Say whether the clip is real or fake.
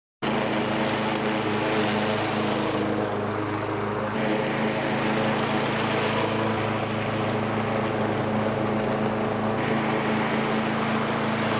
real